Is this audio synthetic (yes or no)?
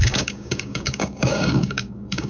yes